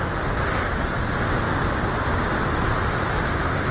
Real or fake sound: real